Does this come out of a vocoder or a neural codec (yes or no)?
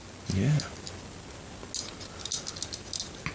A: no